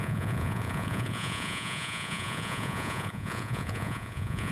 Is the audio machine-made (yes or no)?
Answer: yes